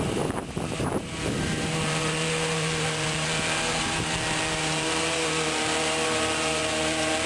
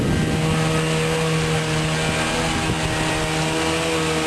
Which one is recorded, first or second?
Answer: second